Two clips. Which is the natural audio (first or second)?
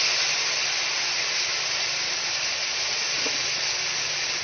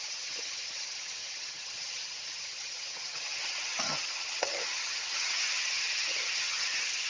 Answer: first